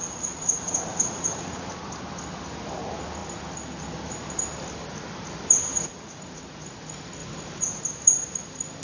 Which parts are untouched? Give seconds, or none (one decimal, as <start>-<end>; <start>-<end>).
1.7-5.7; 6.4-7.2; 7.8-8.8